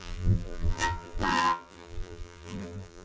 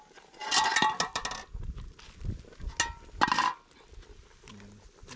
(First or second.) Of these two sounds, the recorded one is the second